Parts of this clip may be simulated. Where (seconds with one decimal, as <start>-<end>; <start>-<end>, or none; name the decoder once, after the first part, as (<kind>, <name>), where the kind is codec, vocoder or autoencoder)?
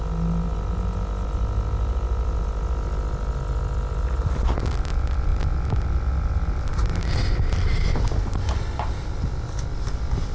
none